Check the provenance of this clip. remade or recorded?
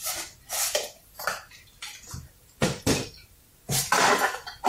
remade